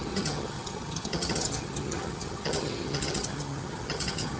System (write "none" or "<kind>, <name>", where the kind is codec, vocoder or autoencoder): vocoder, HiFi-GAN